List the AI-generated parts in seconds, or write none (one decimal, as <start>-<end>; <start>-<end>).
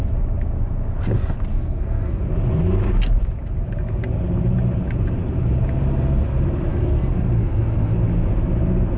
1.5-2.2; 6.7-7.9